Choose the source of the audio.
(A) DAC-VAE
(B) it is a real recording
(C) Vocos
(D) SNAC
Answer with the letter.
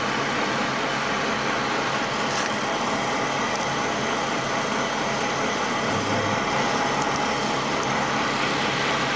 B